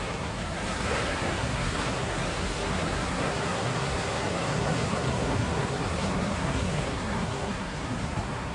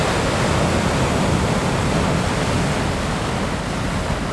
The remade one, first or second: first